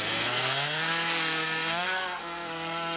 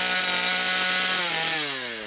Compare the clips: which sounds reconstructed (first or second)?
first